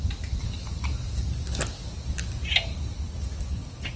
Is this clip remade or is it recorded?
recorded